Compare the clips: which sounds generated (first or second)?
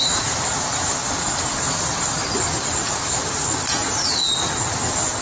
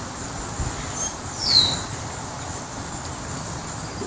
first